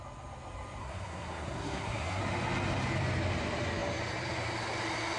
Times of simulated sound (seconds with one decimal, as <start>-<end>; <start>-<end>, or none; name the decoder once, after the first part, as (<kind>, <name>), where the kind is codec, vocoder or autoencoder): 0.8-2.2 (codec, SNAC)